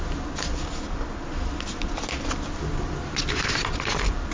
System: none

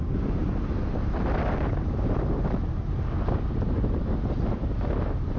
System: none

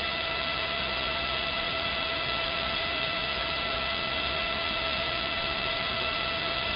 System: vocoder, Vocos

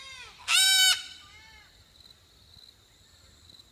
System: none